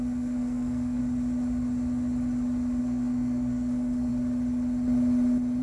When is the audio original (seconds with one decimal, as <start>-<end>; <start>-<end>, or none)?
1.0-2.8; 4.1-5.6